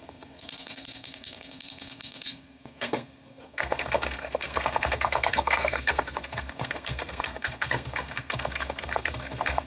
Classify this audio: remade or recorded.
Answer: remade